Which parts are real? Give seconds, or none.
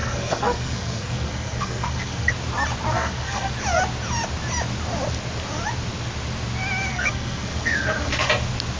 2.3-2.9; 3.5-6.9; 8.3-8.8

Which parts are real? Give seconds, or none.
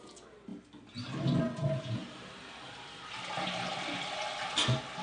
0.0-5.0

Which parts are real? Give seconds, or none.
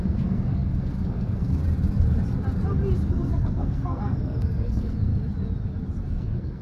1.6-3.1; 5.1-6.1